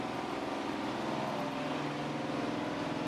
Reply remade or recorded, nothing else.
recorded